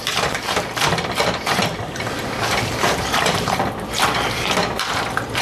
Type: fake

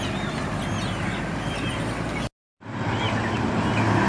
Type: real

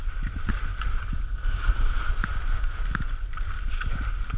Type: real